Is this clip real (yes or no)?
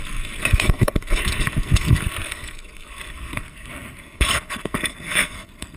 no